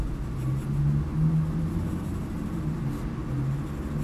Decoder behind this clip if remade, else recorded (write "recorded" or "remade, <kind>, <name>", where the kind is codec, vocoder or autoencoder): recorded